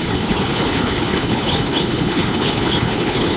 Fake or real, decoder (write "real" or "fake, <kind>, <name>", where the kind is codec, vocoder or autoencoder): fake, codec, HILCodec